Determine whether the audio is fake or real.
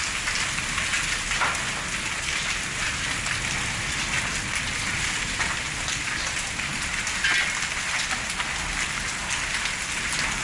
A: real